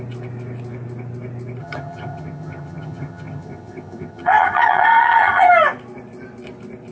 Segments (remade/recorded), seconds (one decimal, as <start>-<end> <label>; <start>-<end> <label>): 0.0-1.6 recorded; 1.6-5.5 remade; 5.5-6.9 recorded